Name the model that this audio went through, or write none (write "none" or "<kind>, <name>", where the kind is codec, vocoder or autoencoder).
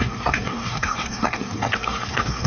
codec, SNAC